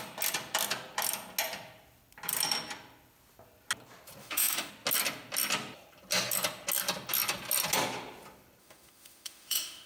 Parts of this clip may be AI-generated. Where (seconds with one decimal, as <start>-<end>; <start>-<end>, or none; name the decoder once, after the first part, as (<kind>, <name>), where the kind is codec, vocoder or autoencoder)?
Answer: 4.2-4.7 (autoencoder, DAC-VAE); 8.6-9.9